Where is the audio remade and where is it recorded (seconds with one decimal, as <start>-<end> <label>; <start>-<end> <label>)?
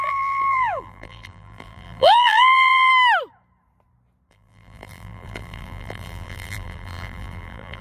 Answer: 0.0-2.9 remade; 2.9-4.3 recorded; 4.3-7.8 remade